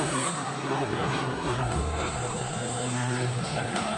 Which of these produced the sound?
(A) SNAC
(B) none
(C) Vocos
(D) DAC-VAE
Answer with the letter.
A